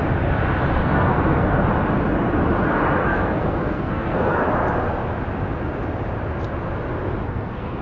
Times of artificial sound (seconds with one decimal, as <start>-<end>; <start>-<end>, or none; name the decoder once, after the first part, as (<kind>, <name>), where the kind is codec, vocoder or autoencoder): 0.8-1.6 (codec, SNAC); 3.0-4.5; 7.2-7.8